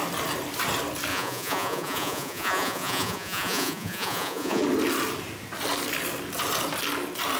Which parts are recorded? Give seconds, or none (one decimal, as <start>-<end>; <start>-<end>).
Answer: 0.0-1.1; 4.6-7.4